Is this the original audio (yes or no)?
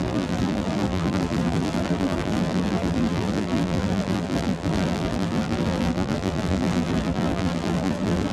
no